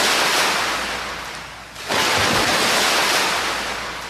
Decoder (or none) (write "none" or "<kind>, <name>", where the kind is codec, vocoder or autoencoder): none